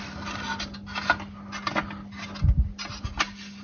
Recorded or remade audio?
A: recorded